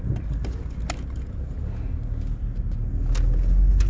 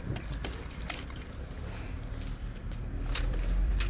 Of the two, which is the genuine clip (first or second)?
first